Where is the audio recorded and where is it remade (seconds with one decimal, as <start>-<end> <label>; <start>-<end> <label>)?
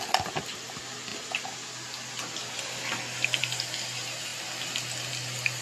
0.0-5.6 recorded